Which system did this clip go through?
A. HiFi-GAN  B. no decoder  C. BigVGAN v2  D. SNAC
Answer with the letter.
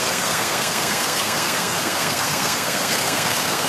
D